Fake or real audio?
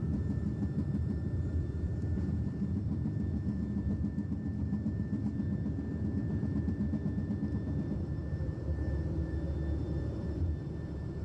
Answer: fake